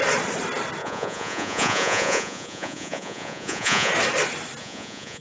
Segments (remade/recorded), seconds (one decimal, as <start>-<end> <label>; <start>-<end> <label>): 0.0-0.8 recorded; 0.8-3.9 remade; 3.9-4.6 recorded; 4.6-5.2 remade